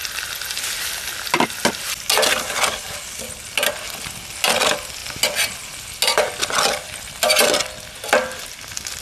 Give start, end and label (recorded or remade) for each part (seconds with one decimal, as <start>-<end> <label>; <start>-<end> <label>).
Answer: 0.0-9.0 recorded